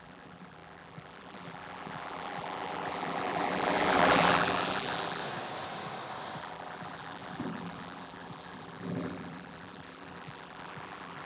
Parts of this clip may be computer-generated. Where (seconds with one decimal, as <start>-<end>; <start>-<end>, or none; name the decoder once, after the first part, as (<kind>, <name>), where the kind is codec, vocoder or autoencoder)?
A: 0.0-5.2 (vocoder, BigVGAN v2); 6.4-11.2